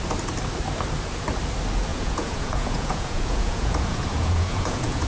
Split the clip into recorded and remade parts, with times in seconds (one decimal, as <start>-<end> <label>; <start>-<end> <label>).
0.0-1.9 recorded; 1.9-5.1 remade